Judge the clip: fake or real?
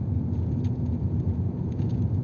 fake